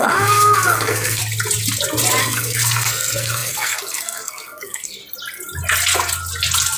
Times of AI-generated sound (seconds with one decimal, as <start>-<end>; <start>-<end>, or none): 0.0-1.2; 2.2-5.0